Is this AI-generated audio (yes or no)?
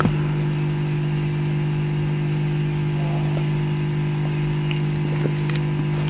no